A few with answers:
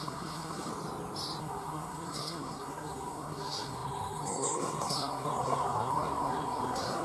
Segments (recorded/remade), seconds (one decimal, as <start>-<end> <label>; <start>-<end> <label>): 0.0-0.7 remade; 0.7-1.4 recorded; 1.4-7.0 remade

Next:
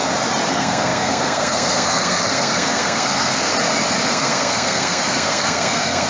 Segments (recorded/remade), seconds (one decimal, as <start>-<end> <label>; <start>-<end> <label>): 0.0-0.5 recorded; 0.5-3.5 remade; 3.5-4.1 recorded; 4.1-6.1 remade

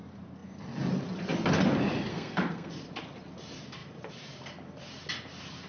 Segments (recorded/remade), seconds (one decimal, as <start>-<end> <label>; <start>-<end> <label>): 0.0-2.1 recorded; 2.1-2.7 remade; 2.7-5.7 recorded

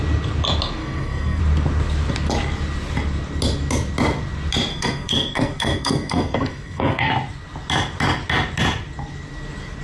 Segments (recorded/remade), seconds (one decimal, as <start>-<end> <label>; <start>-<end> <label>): 0.0-0.8 recorded; 0.8-1.4 remade; 1.4-4.7 recorded; 4.7-7.1 remade; 7.1-9.8 recorded

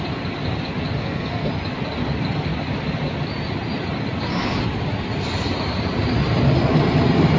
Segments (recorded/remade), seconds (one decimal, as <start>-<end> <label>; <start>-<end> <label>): 0.0-1.0 recorded; 1.0-1.5 remade; 1.5-7.4 recorded